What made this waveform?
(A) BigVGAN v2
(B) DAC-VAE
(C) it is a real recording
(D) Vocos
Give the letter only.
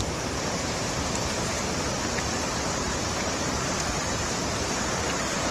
A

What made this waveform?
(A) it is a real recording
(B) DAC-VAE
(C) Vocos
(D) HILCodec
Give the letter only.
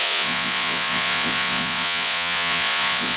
C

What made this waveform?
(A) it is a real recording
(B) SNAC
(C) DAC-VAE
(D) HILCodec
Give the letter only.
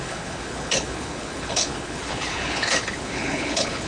D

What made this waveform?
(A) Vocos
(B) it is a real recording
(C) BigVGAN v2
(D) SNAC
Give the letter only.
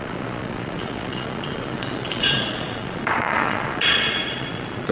A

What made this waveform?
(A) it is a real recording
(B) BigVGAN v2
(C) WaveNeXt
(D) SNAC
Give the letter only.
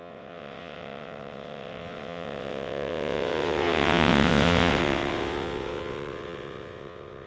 C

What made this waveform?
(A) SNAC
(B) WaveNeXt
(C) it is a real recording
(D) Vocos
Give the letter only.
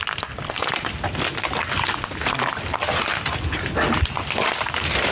C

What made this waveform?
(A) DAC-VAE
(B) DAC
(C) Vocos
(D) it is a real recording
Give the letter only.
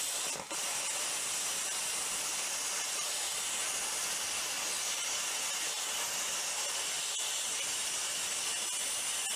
D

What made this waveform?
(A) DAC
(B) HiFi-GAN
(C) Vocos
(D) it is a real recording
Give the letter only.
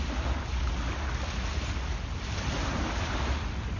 D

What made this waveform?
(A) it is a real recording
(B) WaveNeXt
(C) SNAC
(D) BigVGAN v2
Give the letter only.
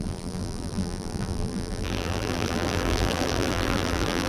D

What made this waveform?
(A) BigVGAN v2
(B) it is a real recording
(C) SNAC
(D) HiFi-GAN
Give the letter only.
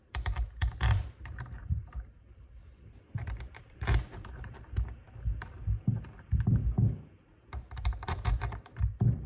A